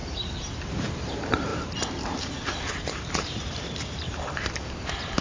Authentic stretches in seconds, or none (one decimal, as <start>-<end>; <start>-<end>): none